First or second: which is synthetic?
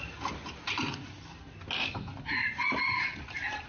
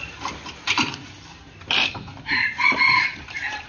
second